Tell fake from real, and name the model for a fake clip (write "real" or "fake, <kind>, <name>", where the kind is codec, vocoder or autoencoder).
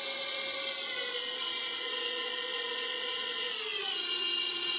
fake, vocoder, Vocos